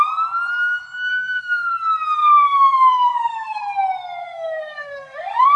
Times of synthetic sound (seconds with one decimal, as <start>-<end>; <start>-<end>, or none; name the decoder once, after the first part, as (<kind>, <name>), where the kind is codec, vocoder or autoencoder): 1.1-1.7 (codec, SNAC); 2.2-3.6; 4.2-5.6